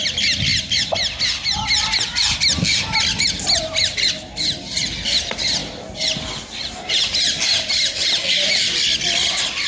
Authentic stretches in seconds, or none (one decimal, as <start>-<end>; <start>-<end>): 0.0-9.7